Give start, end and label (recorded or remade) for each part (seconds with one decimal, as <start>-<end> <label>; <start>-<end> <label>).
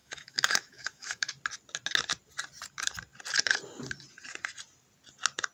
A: 0.0-1.3 remade; 1.3-5.5 recorded